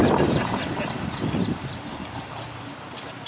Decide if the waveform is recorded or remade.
remade